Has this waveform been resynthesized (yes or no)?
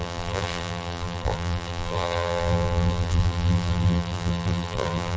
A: yes